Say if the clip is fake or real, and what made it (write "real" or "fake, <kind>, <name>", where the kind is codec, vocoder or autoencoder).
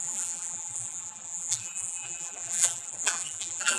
fake, vocoder, BigVGAN v2